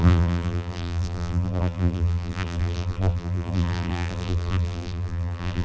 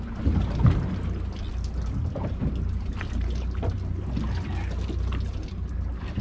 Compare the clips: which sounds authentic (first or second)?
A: second